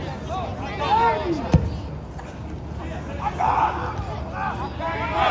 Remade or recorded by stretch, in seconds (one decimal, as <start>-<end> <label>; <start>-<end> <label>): 0.0-5.3 recorded

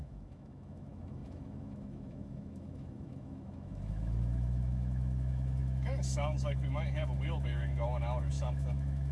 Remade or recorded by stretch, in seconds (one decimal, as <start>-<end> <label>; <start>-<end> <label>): 0.0-9.1 remade